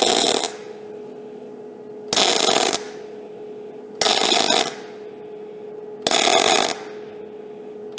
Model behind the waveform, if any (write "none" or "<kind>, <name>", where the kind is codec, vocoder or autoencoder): none